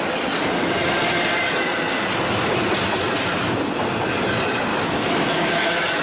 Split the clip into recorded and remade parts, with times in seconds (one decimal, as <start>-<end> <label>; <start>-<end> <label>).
0.0-4.7 recorded; 4.7-6.0 remade